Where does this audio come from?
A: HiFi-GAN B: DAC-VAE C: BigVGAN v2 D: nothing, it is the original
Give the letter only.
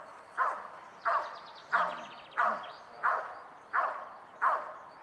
D